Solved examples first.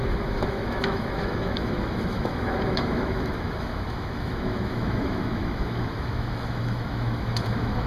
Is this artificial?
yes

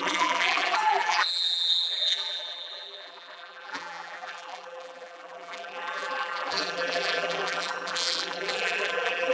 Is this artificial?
yes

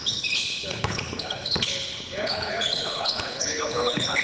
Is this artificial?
yes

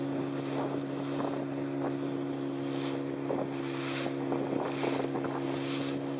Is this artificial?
no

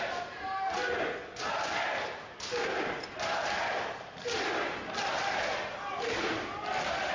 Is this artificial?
no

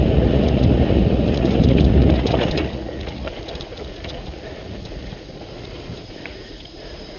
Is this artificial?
yes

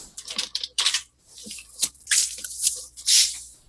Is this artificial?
yes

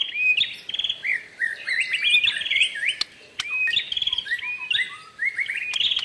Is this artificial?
no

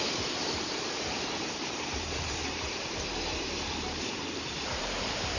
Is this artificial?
yes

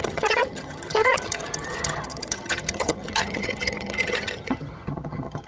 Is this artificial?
yes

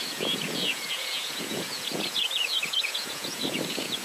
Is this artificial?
yes